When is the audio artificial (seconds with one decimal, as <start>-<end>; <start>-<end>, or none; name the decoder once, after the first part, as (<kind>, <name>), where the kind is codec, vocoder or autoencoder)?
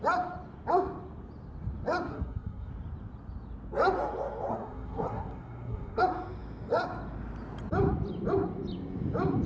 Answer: 2.1-2.7 (codec, SNAC); 4.5-6.0